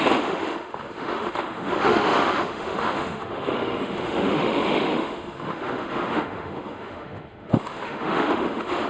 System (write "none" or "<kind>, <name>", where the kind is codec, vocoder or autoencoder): autoencoder, DAC-VAE